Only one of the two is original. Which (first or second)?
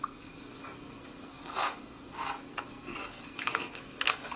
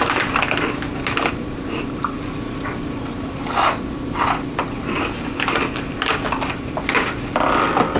second